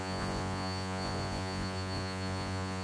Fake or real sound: fake